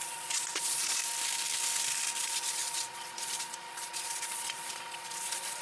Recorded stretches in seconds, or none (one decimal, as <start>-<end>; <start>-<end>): 1.0-2.2